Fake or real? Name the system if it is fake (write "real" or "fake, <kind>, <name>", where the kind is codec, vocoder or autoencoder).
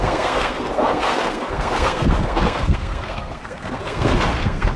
fake, codec, SNAC